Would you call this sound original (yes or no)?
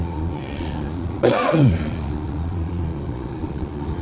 no